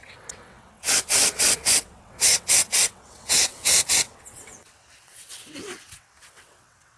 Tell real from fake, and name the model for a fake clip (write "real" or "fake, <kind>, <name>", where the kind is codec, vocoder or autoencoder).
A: fake, vocoder, WaveNeXt